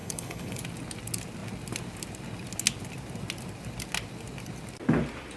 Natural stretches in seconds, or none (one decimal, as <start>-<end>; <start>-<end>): 0.6-5.4